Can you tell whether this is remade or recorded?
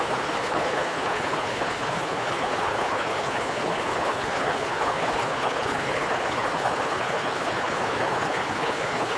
remade